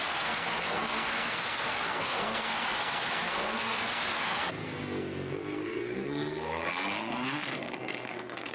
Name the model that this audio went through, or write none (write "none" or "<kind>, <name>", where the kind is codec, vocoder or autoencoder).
codec, SNAC